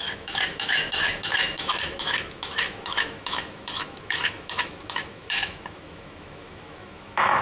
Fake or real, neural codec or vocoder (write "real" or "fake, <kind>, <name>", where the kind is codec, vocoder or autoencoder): fake, autoencoder, DAC-VAE